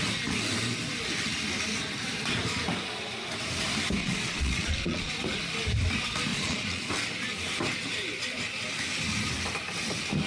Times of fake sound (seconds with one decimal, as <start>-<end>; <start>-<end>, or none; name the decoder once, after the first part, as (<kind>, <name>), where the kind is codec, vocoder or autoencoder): 4.0-5.1 (vocoder, Vocos); 6.3-6.9